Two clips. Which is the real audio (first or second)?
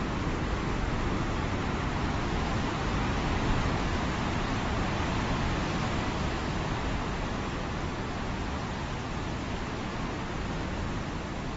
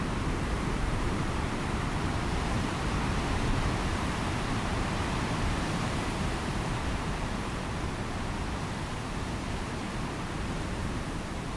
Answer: first